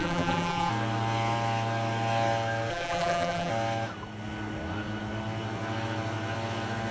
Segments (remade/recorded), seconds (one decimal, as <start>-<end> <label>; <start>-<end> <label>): 0.0-0.7 remade; 0.7-2.7 recorded; 2.7-3.5 remade; 3.5-6.9 recorded